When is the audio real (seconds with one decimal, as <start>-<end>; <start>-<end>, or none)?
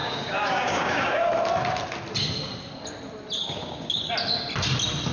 1.3-3.4; 4.1-5.1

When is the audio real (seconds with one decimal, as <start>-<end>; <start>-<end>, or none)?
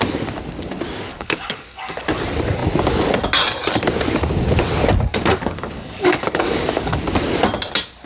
0.0-1.1; 2.2-5.1; 7.0-8.1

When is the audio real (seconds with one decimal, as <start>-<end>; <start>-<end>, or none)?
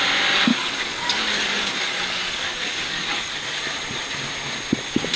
0.0-0.5; 3.6-5.2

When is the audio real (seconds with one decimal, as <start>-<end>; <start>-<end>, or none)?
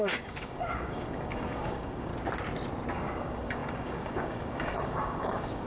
2.1-2.9